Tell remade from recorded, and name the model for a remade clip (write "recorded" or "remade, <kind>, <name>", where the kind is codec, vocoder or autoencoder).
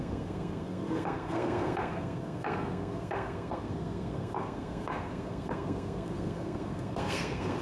remade, codec, SNAC